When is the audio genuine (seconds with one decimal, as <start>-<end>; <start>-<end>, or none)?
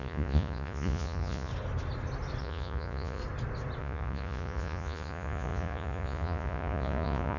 1.5-2.4; 3.2-3.8